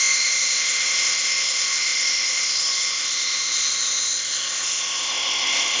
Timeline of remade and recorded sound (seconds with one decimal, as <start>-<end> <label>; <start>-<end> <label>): 0.0-5.8 remade